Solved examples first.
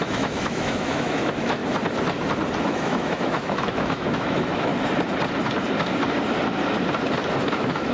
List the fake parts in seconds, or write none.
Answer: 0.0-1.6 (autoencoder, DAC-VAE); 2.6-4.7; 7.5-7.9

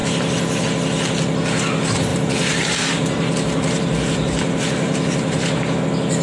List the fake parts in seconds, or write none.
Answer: 0.0-0.6 (vocoder, BigVGAN v2); 2.1-5.8

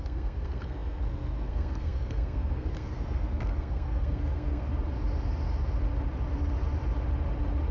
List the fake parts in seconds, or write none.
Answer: 0.0-4.7 (codec, SNAC)

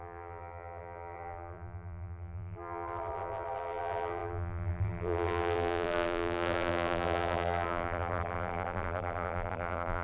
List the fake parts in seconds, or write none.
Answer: 0.0-10.0 (vocoder, BigVGAN v2)